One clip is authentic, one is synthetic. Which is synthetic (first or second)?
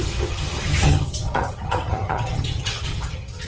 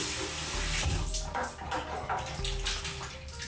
first